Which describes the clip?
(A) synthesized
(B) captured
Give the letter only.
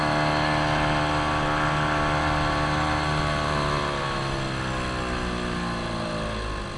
B